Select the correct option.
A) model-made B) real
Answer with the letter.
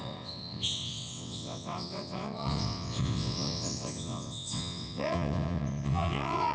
A